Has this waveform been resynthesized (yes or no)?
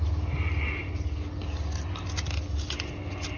no